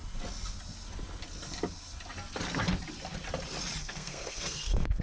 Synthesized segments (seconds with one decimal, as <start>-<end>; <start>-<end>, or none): 3.8-5.0